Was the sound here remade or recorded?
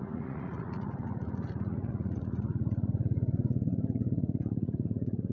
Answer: remade